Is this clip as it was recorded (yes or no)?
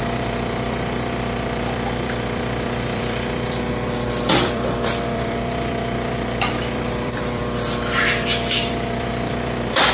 no